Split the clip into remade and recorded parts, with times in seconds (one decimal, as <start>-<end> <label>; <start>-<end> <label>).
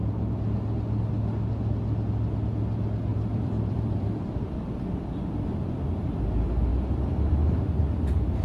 0.0-3.1 recorded; 3.1-6.1 remade; 6.1-8.4 recorded